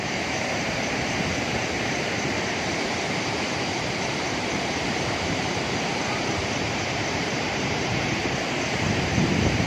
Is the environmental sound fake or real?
fake